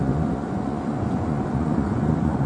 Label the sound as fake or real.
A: fake